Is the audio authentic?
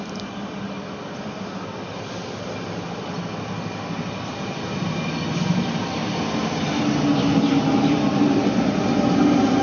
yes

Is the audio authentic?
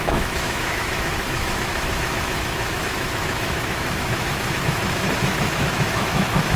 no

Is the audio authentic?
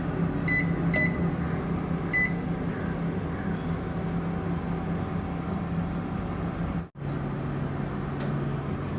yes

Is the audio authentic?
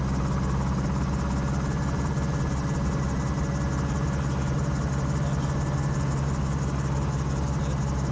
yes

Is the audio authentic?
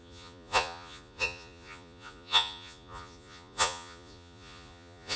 no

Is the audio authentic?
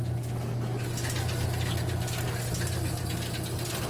yes